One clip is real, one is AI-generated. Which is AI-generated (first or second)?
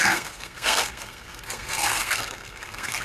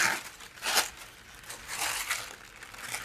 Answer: first